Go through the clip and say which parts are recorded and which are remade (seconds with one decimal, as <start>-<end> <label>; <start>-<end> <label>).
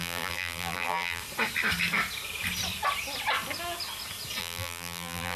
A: 0.0-1.2 remade; 1.2-4.4 recorded; 4.4-5.4 remade